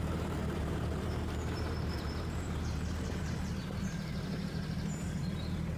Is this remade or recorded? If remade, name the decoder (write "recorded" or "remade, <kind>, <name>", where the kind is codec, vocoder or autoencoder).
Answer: remade, vocoder, BigVGAN v2